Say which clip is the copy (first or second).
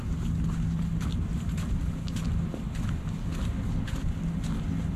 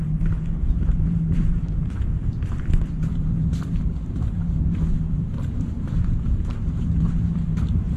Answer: second